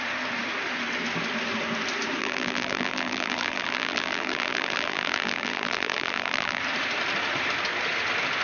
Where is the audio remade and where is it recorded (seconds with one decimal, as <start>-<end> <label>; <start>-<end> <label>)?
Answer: 0.0-2.2 recorded; 2.2-6.6 remade; 6.6-8.4 recorded

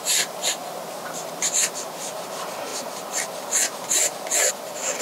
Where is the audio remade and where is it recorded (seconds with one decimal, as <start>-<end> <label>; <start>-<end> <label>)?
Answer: 0.0-5.0 recorded

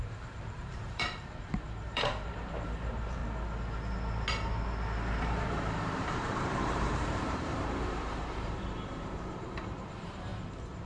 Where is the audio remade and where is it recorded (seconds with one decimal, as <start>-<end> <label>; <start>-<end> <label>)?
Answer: 0.0-3.2 remade; 3.2-5.2 recorded; 5.2-10.3 remade; 10.3-10.9 recorded

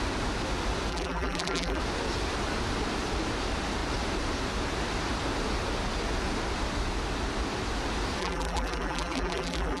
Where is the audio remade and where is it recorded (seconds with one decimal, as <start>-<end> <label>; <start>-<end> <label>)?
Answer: 0.0-0.9 recorded; 0.9-1.8 remade; 1.8-8.2 recorded; 8.2-9.8 remade

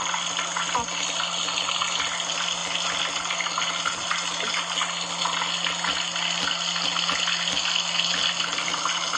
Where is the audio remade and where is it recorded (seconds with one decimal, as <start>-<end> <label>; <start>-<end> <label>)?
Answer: 0.0-9.2 recorded